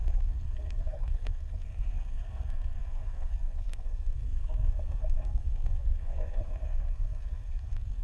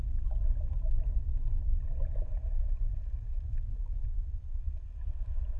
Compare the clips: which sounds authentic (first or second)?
second